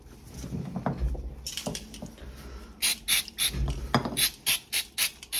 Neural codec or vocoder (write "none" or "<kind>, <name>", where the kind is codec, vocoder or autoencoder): none